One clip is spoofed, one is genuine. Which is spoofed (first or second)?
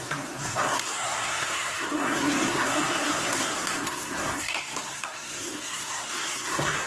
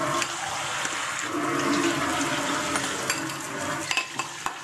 first